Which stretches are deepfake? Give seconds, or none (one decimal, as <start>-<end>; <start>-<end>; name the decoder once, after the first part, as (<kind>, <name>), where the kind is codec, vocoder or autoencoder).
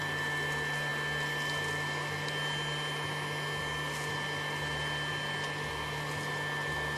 none